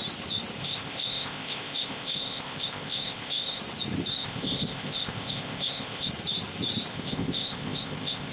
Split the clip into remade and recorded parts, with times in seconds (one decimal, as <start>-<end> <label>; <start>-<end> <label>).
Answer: 0.0-0.6 recorded; 0.6-3.6 remade; 3.6-4.1 recorded; 4.1-6.1 remade; 6.1-6.9 recorded; 6.9-8.3 remade